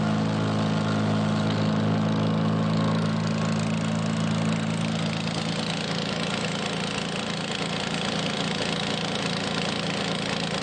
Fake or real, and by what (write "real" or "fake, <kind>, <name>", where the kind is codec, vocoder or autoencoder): real